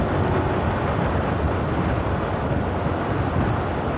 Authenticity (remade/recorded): recorded